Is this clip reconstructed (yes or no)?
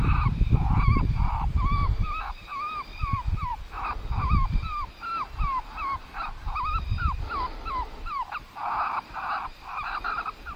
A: yes